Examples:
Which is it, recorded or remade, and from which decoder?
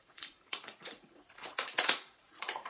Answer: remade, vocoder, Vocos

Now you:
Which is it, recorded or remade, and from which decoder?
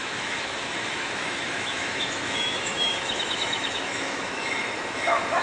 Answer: remade, autoencoder, DAC-VAE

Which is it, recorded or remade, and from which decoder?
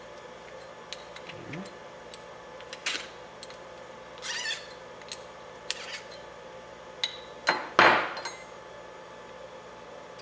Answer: recorded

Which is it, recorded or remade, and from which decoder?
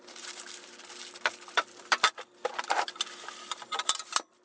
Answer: remade, vocoder, BigVGAN v2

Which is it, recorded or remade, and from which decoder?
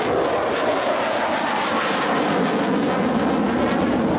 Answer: recorded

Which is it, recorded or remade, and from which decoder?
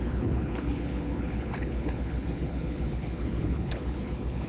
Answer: remade, codec, HILCodec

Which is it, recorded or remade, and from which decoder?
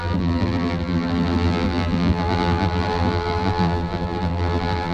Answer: remade, vocoder, BigVGAN v2